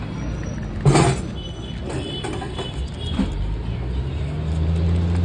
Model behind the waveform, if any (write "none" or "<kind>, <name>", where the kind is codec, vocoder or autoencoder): none